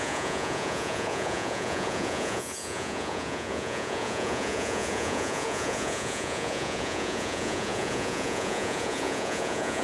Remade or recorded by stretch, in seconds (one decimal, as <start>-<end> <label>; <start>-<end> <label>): 0.0-9.8 remade